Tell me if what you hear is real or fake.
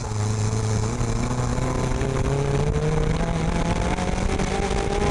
real